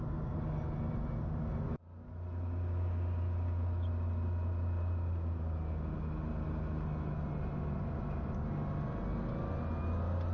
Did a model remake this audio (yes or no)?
no